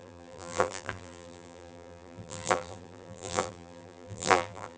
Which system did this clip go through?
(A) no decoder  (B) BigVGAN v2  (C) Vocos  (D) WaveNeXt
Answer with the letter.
B